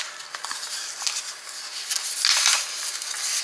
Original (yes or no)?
yes